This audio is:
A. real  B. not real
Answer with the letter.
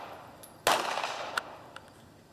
A